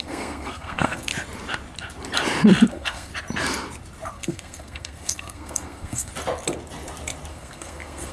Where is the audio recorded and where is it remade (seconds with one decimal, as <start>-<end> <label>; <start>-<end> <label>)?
0.0-1.1 remade; 1.1-2.7 recorded; 2.7-3.1 remade; 3.1-4.1 recorded; 4.1-6.1 remade; 6.1-7.3 recorded; 7.3-8.1 remade